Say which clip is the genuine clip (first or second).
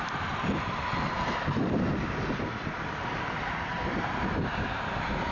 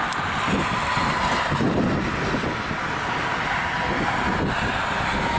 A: second